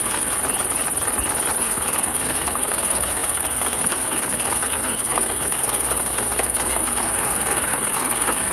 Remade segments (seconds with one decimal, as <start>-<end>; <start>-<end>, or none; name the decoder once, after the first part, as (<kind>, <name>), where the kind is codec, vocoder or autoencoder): 0.0-0.4 (codec, SNAC); 1.6-8.5